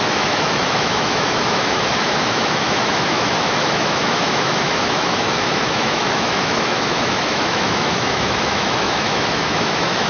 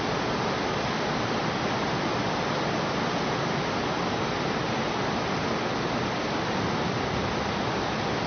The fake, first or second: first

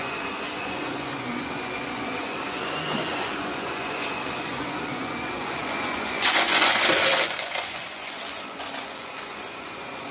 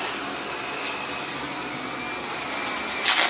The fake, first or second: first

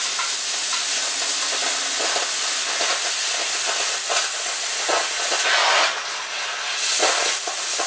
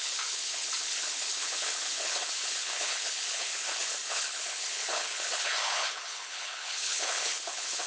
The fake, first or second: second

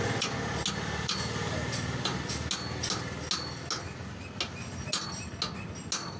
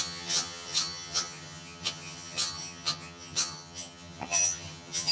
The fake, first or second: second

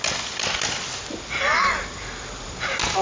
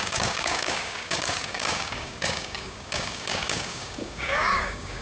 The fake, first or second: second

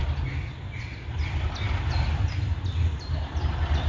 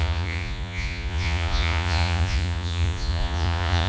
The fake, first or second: second